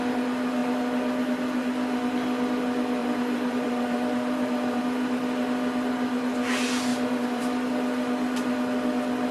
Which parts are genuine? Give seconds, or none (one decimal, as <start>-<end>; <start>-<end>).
0.0-3.0; 4.8-6.9; 7.4-9.3

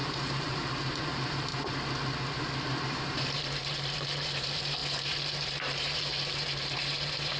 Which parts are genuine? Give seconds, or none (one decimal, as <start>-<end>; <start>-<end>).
1.5-2.4

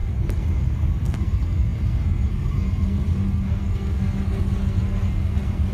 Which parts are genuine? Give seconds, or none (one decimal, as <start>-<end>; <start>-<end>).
none

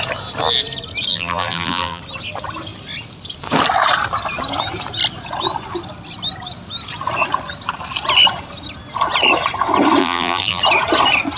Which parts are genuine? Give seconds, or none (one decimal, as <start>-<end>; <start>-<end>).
0.0-1.1; 2.0-10.0; 10.6-11.4

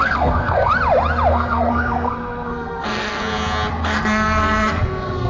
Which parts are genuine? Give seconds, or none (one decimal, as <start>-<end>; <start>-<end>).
0.7-1.3; 3.2-3.7

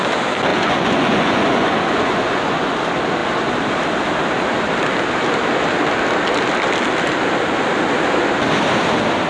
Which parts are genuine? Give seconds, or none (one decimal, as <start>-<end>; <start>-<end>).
0.0-0.5; 2.7-9.3

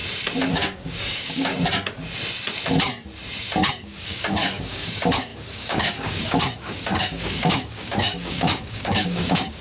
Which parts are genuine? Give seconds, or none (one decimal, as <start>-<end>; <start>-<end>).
0.0-0.5; 1.5-3.7

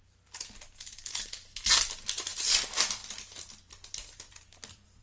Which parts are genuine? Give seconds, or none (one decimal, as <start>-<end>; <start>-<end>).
0.0-5.0